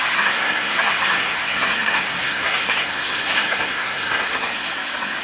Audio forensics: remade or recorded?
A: remade